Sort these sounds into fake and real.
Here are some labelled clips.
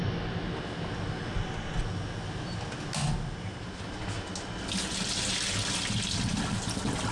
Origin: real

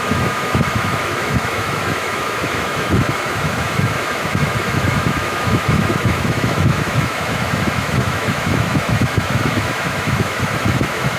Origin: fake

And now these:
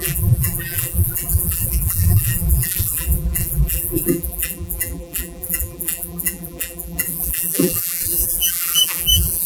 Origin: fake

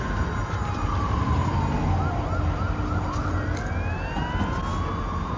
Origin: real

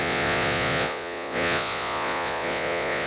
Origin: fake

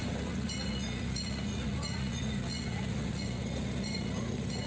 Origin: fake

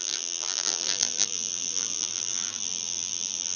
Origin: fake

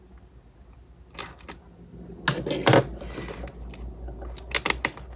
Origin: real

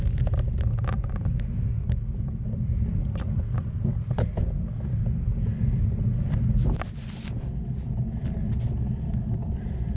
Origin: real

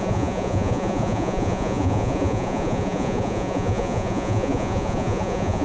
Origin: fake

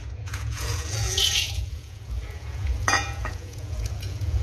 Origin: fake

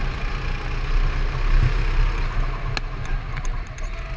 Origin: real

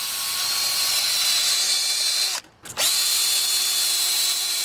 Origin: real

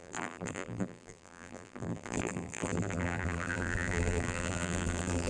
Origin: fake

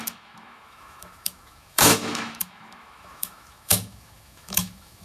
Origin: fake